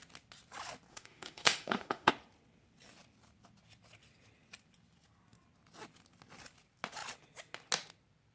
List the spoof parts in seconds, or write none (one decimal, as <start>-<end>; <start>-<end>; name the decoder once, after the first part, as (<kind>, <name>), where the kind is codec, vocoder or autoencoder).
0.9-2.1 (autoencoder, DAC-VAE)